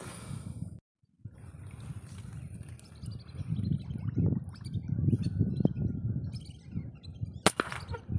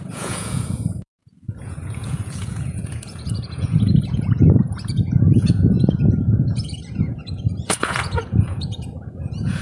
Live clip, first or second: first